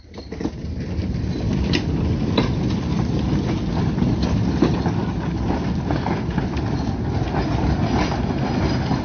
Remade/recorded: recorded